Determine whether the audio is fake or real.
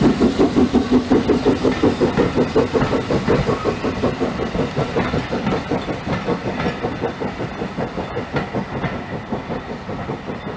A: real